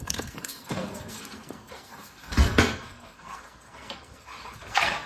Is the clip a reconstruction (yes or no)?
yes